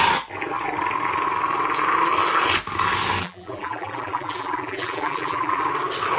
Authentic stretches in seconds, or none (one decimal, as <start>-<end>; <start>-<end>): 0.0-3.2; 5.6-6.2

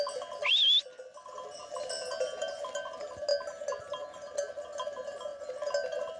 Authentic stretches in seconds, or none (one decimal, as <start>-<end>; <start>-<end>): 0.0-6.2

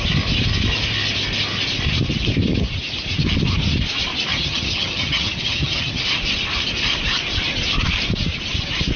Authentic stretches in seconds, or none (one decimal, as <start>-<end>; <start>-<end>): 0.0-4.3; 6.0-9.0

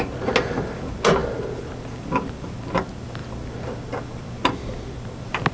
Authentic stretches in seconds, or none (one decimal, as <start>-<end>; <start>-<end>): 0.0-5.5

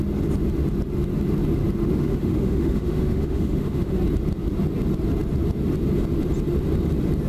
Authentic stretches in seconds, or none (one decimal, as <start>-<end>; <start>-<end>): 0.0-1.8; 4.0-7.3